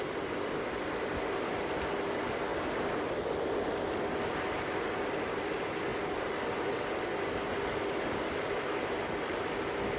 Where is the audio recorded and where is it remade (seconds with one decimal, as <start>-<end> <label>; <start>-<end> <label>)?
0.0-10.0 recorded